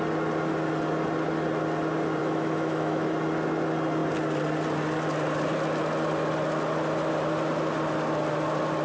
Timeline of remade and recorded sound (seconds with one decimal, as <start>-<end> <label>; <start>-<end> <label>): 0.0-2.2 recorded; 2.2-3.1 remade; 3.1-8.8 recorded